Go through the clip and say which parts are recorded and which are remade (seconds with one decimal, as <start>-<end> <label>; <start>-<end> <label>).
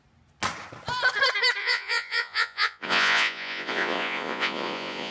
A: 0.0-1.6 recorded; 1.6-5.1 remade